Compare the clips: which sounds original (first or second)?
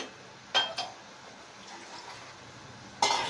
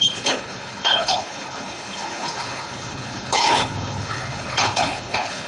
first